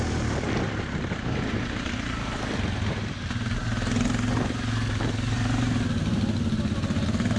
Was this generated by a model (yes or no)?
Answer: no